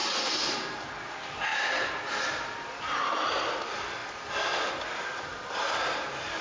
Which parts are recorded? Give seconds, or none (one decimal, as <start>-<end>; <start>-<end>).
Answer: 0.0-1.5; 3.0-4.0; 4.7-5.3